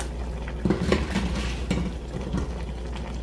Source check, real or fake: real